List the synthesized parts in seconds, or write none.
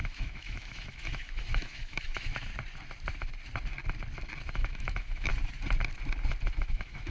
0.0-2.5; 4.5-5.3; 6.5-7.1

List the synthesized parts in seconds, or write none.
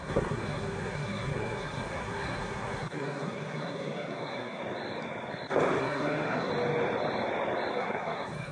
0.0-4.6; 5.8-6.5; 7.7-8.5